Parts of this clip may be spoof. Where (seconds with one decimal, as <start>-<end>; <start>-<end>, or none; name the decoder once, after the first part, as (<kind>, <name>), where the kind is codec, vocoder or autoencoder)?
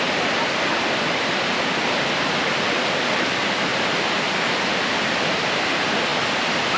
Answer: none